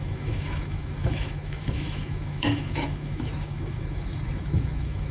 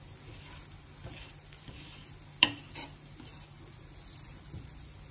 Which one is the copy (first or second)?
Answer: first